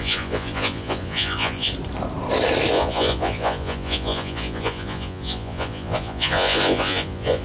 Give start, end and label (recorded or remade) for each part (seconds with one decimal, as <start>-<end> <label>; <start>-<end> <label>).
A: 0.0-1.7 remade; 1.7-2.7 recorded; 2.7-7.4 remade